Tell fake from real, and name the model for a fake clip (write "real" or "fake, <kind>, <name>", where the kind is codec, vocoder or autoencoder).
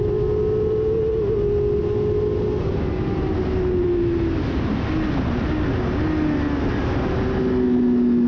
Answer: real